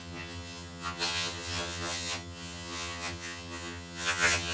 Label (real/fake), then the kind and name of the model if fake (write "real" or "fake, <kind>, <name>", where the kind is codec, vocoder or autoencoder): fake, vocoder, HiFi-GAN